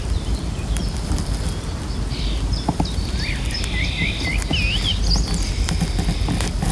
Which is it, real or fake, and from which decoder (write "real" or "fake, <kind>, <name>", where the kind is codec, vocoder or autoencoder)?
real